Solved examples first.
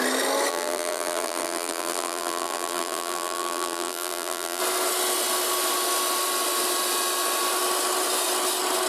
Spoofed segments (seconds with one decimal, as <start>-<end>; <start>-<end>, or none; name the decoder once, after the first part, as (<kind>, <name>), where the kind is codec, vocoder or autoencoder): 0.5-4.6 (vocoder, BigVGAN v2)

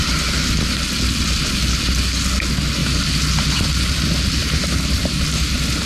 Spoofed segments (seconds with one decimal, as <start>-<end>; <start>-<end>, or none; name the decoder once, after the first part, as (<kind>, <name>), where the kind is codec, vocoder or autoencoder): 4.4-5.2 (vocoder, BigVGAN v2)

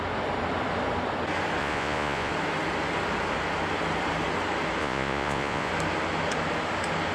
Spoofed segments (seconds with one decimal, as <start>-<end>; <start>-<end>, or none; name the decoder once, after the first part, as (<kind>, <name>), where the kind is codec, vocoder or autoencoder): 1.6-2.3 (vocoder, Vocos); 4.8-5.7

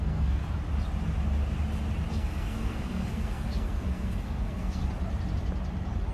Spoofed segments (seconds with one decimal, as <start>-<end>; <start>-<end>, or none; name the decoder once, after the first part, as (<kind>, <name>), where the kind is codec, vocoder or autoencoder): 0.0-0.4 (codec, SNAC); 2.1-4.8

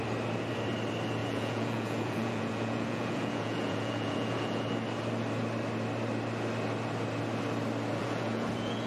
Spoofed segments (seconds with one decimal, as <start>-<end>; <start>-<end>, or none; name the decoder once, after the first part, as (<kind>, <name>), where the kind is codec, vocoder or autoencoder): 1.2-4.6 (vocoder, Vocos); 8.0-8.9